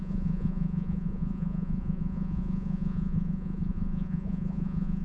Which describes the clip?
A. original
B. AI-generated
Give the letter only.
B